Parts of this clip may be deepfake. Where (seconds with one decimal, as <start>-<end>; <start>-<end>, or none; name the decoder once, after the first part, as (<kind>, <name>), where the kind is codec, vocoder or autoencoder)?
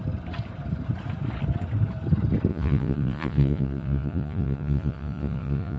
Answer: 2.5-5.8 (vocoder, Vocos)